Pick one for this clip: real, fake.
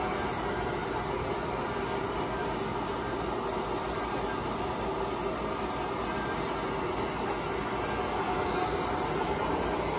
real